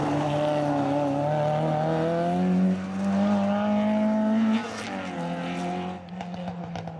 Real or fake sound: real